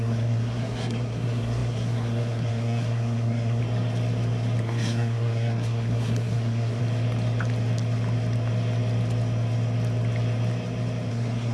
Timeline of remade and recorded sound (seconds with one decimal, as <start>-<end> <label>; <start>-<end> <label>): 0.0-3.6 remade; 3.6-4.6 recorded; 4.6-6.8 remade; 6.8-11.1 recorded; 11.1-11.5 remade